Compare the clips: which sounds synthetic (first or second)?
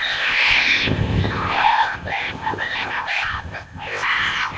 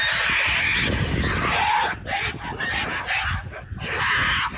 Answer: first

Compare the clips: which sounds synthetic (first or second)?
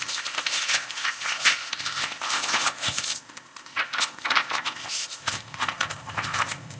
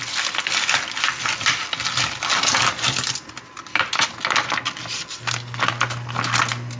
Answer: first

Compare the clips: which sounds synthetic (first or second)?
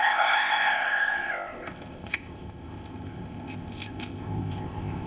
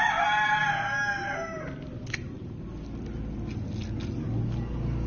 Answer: first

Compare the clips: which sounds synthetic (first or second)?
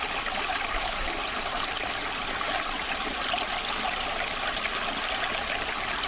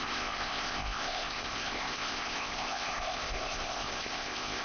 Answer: second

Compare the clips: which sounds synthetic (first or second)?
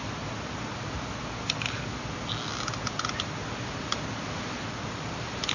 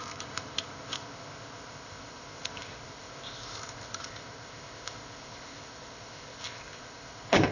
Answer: second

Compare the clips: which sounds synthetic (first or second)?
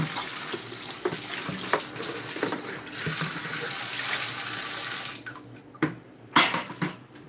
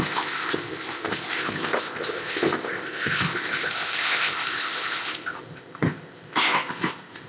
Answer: second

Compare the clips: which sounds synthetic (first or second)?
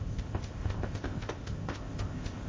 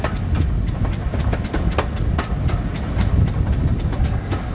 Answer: first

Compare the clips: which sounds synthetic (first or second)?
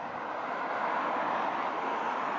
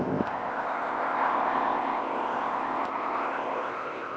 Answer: second